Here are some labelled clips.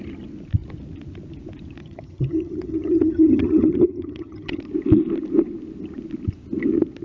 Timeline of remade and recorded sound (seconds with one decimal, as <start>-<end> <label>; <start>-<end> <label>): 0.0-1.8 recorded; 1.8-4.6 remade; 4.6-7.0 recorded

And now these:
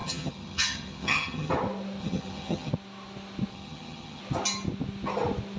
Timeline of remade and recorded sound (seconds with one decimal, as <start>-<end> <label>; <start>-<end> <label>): 0.0-1.5 remade; 1.5-2.0 recorded; 2.0-2.7 remade; 2.7-3.5 recorded; 3.5-4.2 remade; 4.2-5.6 recorded

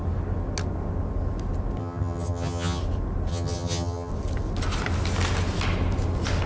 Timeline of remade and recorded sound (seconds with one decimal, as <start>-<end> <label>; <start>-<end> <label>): 0.0-1.8 recorded; 1.8-2.8 remade; 2.8-3.3 recorded; 3.3-4.1 remade; 4.1-6.5 recorded

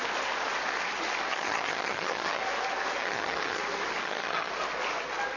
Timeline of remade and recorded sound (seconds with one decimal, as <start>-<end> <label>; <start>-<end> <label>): 0.0-1.3 recorded; 1.3-2.4 remade; 2.4-3.0 recorded; 3.0-3.6 remade; 3.6-4.0 recorded; 4.0-4.5 remade; 4.5-5.4 recorded